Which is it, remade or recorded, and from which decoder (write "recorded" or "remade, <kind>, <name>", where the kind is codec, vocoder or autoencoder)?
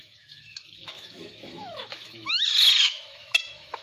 remade, autoencoder, DAC-VAE